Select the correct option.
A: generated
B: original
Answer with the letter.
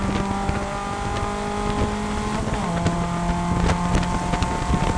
B